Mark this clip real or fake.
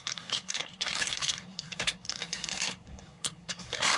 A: fake